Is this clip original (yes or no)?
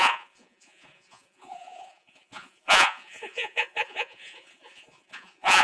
no